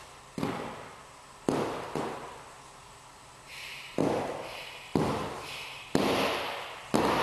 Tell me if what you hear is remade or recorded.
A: recorded